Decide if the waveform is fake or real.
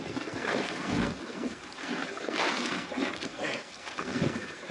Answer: fake